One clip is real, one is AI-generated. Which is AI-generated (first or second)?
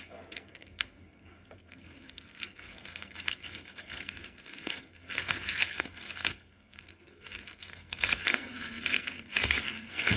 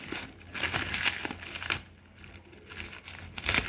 first